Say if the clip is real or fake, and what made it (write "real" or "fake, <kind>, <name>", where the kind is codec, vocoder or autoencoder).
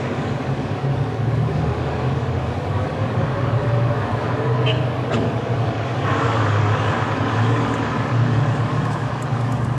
fake, codec, DAC